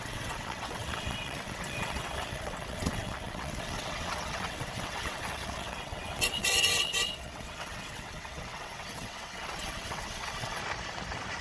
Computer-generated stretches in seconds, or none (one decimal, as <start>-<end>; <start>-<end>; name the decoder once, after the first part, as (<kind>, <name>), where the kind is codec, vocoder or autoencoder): 0.0-10.6 (vocoder, WaveNeXt)